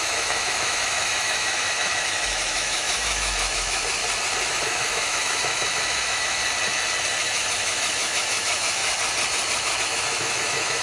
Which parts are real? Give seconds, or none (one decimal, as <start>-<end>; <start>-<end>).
4.0-4.5; 6.4-7.2; 8.8-9.8